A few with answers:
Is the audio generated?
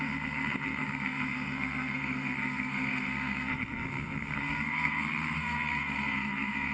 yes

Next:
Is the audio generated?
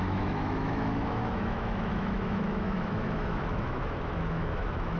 yes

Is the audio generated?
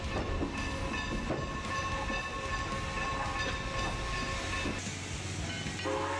no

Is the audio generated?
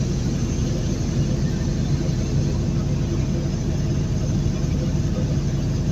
no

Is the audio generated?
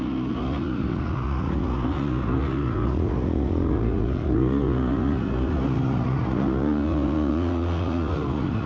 yes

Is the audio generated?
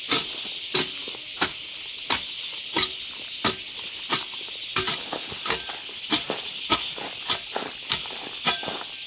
no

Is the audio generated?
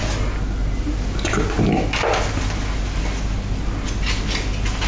no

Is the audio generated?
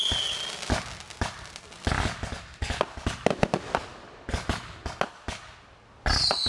no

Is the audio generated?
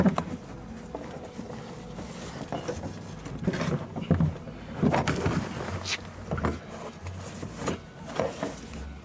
no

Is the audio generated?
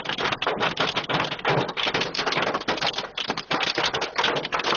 no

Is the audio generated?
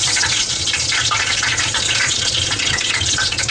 yes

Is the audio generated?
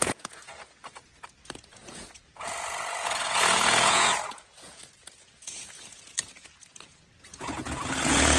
yes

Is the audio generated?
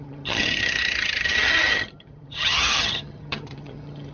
yes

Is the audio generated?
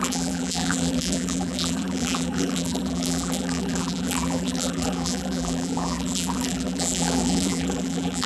yes